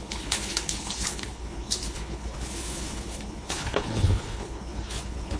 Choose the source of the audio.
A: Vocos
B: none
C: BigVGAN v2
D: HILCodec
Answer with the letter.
D